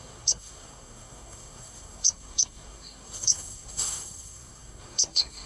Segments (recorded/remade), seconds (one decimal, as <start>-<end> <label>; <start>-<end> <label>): 0.0-5.5 remade